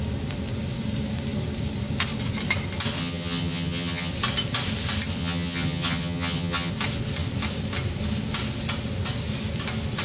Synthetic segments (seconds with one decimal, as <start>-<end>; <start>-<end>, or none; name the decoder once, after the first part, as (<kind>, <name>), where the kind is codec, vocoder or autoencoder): 3.0-4.1 (vocoder, HiFi-GAN); 5.2-6.7